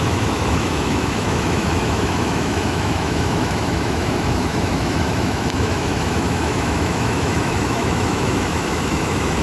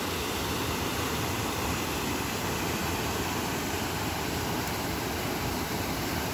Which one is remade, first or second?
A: first